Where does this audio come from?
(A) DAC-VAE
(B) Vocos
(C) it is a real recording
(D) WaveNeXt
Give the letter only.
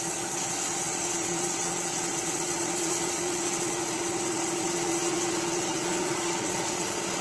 B